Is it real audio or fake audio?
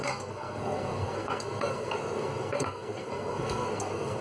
fake